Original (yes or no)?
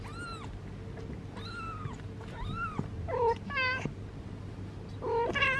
yes